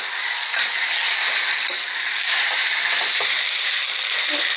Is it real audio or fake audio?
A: real